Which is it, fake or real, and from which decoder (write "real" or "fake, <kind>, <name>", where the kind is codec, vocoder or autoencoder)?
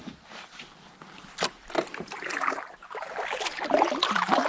real